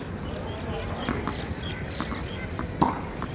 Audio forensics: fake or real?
real